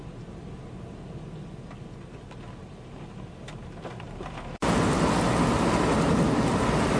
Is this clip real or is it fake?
real